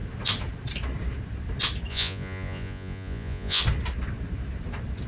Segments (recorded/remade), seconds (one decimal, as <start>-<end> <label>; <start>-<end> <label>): 0.0-1.9 recorded; 1.9-3.6 remade; 3.6-5.1 recorded